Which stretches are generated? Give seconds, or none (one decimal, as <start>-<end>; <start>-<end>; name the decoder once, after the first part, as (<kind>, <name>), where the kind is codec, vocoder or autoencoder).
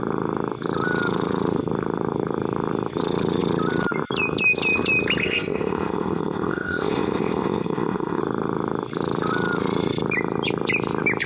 5.2-8.2 (codec, ZipCodec)